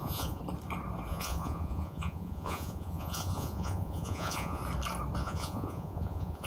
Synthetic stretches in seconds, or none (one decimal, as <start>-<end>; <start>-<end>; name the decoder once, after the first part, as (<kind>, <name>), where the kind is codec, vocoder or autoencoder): 0.0-0.4 (vocoder, Vocos); 1.1-4.6; 5.2-6.5